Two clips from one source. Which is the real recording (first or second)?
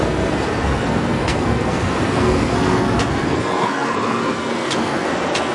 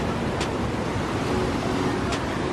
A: second